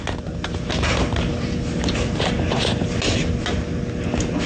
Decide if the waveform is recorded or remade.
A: recorded